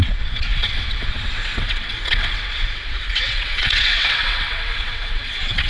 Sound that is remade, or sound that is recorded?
remade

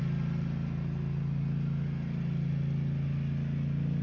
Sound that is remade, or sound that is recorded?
recorded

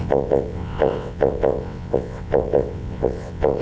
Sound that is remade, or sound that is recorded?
remade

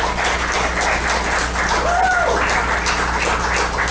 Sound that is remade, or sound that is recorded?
recorded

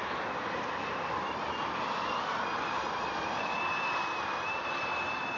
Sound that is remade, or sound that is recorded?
recorded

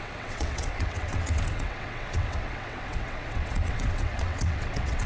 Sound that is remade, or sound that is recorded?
remade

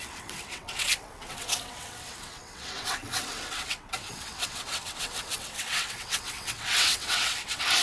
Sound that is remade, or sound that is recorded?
remade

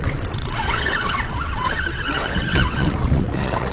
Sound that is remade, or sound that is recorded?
remade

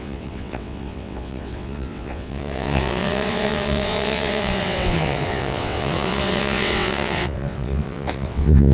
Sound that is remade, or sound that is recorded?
remade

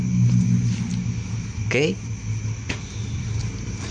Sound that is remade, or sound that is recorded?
recorded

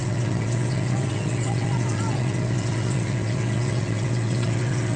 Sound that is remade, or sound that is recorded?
remade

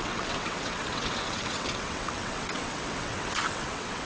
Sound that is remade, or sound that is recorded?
remade